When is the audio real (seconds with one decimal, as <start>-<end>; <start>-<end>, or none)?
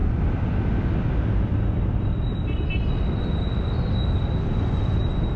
0.0-5.4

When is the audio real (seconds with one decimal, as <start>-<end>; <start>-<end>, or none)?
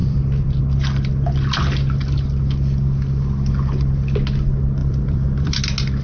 0.6-4.8; 5.6-6.0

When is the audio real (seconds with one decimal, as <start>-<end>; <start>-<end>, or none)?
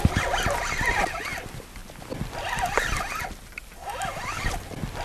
0.0-1.8; 3.2-5.0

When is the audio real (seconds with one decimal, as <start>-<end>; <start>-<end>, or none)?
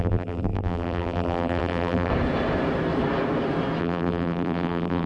2.1-3.8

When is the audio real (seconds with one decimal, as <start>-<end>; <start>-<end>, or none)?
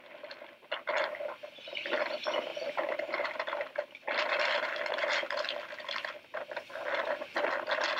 0.0-2.5; 3.4-8.0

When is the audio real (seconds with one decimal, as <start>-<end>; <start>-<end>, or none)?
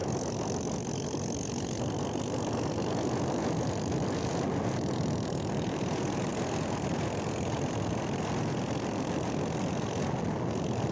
0.0-10.9